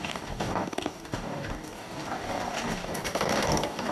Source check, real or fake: fake